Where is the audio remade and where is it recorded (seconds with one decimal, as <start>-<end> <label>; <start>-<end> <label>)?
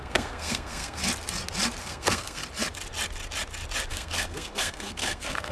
0.0-1.0 remade; 1.0-1.8 recorded; 1.8-2.4 remade; 2.4-3.9 recorded; 3.9-5.5 remade